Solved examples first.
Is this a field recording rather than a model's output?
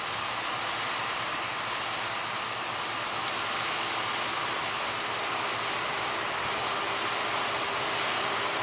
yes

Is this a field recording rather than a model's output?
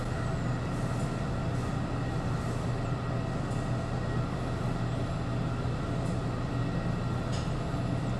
yes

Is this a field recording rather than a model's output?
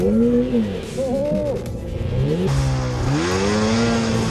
yes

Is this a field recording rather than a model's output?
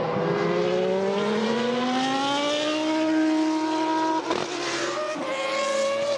yes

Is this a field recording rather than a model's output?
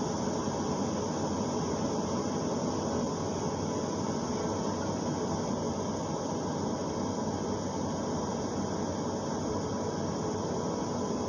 yes